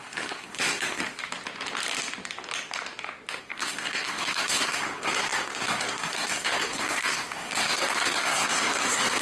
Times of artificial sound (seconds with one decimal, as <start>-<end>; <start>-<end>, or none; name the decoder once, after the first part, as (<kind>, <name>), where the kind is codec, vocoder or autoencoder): 0.0-1.0 (codec, SNAC); 3.4-9.2